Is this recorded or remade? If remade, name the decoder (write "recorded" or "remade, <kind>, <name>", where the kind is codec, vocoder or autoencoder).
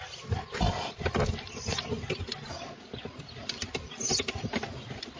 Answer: recorded